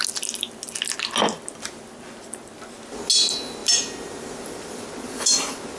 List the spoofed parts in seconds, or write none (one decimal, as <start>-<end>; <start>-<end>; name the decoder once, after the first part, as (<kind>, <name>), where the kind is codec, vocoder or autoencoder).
none